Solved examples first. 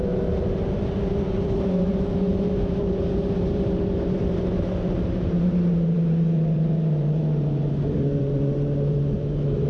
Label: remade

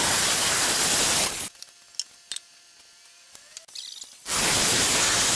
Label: recorded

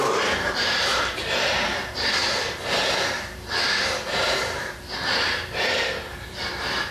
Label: remade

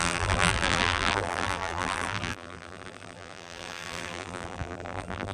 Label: remade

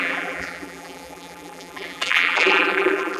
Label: remade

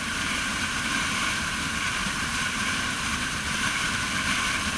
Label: remade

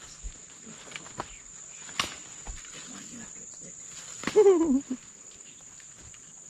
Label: recorded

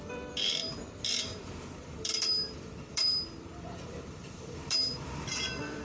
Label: remade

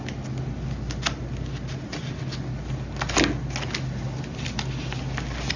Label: recorded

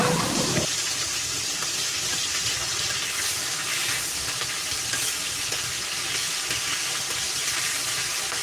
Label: recorded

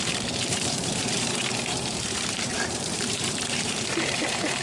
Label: remade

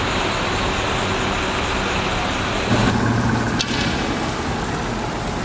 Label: recorded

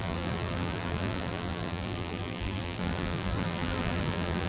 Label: remade